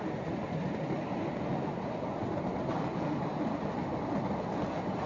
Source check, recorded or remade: recorded